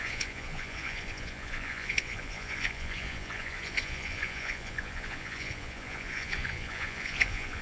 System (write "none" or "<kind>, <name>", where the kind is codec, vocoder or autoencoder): vocoder, Vocos